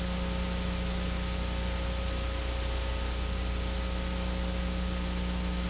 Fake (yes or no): no